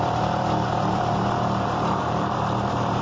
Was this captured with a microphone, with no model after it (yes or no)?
no